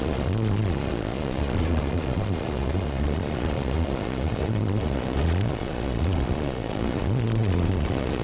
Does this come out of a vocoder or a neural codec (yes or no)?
yes